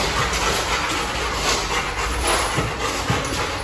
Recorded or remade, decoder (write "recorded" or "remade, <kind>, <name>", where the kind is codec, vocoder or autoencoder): recorded